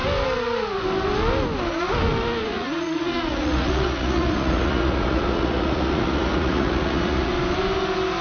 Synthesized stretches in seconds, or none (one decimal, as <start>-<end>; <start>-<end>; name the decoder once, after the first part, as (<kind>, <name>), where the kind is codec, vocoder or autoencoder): 2.4-7.3 (vocoder, Vocos)